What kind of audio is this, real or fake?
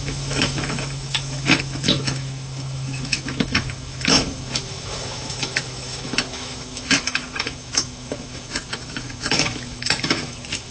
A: fake